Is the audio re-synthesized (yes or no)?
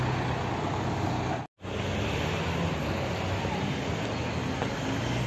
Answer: no